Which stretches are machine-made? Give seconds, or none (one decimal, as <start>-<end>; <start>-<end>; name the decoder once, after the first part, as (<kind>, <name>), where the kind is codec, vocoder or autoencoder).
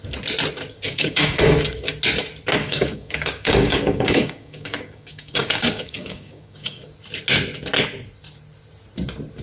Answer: 0.9-1.5 (codec, DAC); 2.6-6.8